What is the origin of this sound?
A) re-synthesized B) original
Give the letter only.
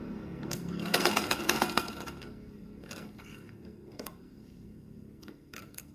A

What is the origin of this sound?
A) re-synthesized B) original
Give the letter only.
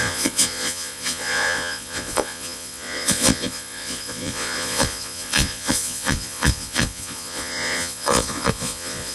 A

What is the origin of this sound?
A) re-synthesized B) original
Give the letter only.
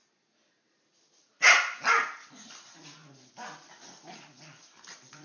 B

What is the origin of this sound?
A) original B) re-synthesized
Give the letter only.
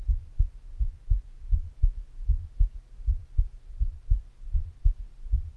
A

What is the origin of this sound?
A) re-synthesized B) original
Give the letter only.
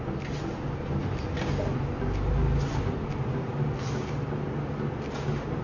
B